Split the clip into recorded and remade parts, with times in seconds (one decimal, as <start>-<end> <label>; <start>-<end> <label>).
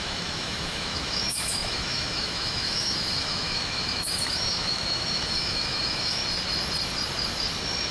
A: 0.0-6.2 remade; 6.2-7.9 recorded